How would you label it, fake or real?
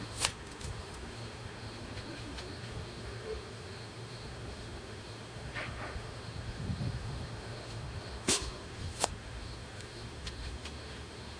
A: fake